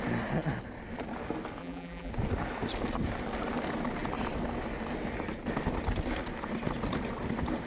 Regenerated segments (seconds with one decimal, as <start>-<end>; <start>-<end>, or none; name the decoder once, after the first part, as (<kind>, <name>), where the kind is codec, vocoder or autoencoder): 1.6-2.1 (vocoder, BigVGAN v2)